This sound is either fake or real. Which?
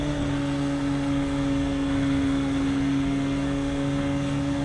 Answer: fake